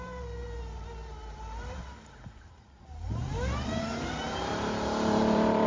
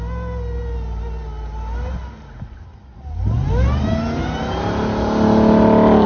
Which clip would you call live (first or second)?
second